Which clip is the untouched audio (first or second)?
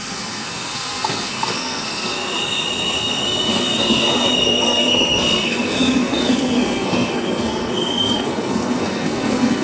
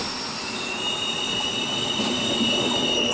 second